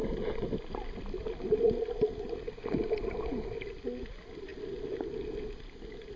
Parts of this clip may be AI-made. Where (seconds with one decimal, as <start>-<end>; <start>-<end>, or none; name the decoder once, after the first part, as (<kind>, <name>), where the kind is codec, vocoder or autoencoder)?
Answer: none